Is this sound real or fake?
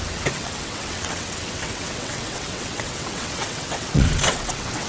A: fake